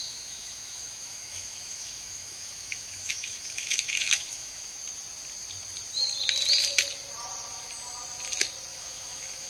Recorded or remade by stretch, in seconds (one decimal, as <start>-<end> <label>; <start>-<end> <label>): 0.0-4.8 remade; 4.8-8.7 recorded; 8.7-9.5 remade